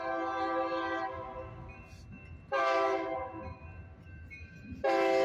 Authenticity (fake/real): real